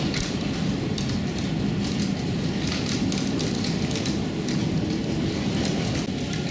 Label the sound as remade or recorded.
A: recorded